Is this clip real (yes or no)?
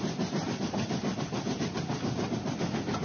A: yes